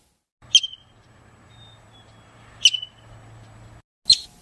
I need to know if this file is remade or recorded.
recorded